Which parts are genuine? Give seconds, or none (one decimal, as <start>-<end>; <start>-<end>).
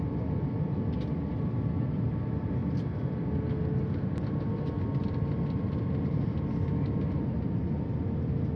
0.0-8.6